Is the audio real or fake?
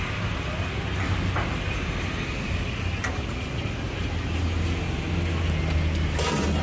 real